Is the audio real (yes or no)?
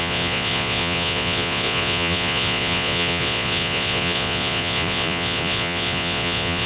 no